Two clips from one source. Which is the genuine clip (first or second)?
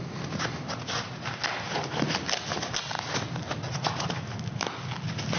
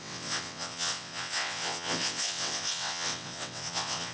first